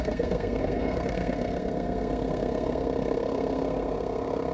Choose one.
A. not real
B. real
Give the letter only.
A